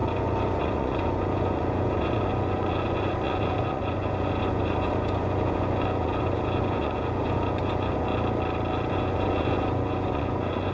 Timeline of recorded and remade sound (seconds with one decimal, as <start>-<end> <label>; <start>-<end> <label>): 0.0-8.1 remade; 8.1-8.9 recorded; 8.9-10.7 remade